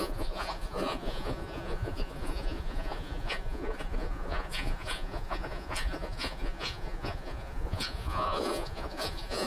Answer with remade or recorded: remade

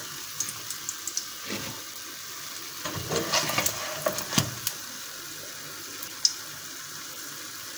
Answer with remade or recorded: recorded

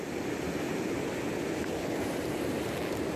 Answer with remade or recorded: recorded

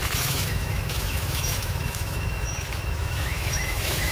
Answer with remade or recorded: remade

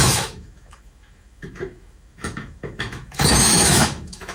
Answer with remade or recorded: remade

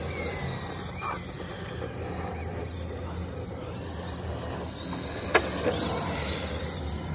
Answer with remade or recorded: recorded